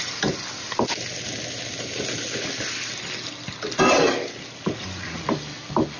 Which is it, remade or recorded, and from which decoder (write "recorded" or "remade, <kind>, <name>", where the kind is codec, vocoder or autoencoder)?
recorded